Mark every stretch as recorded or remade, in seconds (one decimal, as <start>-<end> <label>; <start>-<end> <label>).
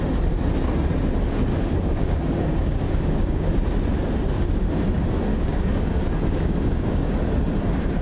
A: 0.0-1.5 recorded; 1.5-3.5 remade; 3.5-5.3 recorded; 5.3-7.1 remade; 7.1-8.0 recorded